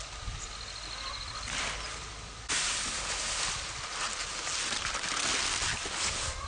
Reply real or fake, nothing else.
real